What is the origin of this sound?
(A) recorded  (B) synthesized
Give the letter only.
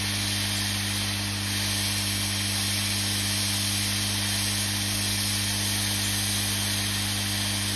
A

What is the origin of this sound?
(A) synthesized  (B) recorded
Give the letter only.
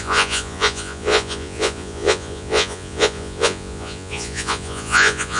A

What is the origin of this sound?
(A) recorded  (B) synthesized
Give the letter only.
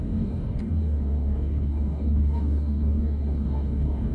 B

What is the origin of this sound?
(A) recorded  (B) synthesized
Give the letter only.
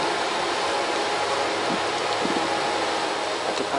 A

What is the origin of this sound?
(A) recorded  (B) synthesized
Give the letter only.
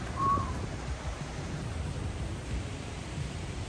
B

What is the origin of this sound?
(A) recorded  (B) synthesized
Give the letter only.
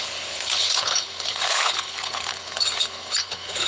B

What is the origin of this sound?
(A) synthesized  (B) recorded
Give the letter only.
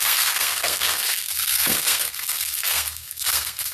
A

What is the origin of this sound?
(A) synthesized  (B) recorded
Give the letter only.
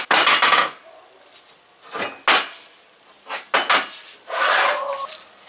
B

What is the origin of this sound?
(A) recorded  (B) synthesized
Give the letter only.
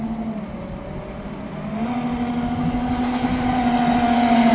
A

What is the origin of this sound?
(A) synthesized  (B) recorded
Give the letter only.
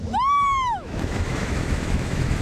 A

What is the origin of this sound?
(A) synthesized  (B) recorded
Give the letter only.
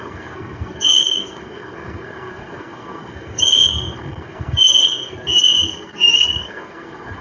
A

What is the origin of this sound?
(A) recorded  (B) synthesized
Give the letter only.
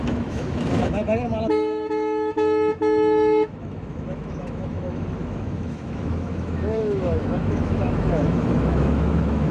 B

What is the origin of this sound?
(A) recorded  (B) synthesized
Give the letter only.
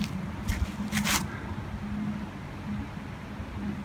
A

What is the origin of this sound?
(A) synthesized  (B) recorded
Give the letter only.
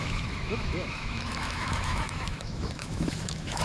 A